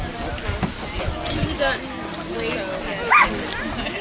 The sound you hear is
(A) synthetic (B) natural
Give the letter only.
B